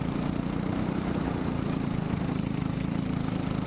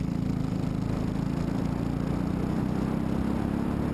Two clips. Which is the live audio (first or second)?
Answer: second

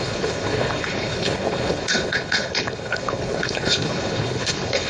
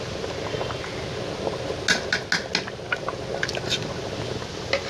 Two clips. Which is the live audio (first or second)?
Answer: second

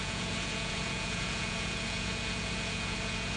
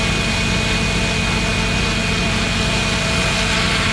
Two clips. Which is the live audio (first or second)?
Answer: second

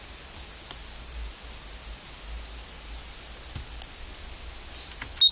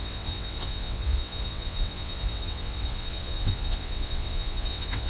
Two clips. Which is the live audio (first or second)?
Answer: first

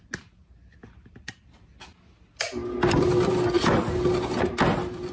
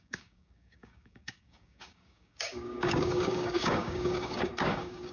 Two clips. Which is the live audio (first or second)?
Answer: first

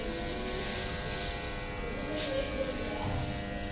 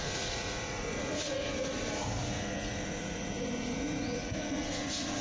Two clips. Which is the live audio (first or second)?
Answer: first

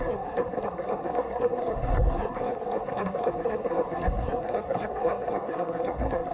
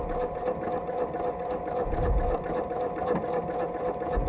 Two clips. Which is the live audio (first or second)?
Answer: second